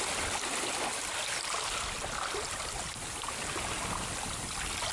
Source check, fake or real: real